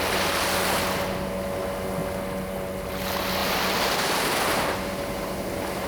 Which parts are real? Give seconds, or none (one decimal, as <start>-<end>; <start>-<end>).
0.0-3.4; 4.2-5.9